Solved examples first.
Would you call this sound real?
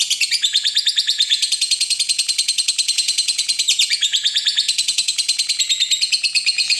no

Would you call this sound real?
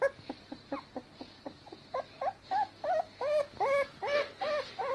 yes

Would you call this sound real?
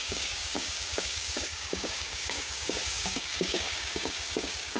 no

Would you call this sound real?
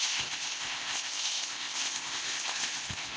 no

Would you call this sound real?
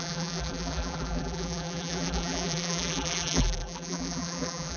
no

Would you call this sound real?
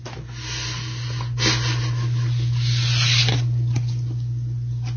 yes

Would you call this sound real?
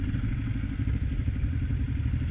yes